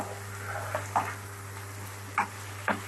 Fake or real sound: real